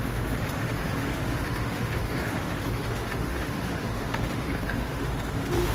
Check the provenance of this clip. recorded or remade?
remade